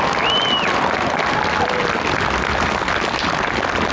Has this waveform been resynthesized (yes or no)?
no